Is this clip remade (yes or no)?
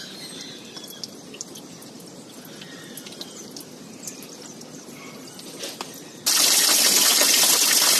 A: no